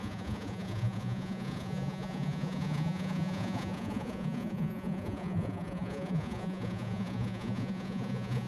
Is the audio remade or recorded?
remade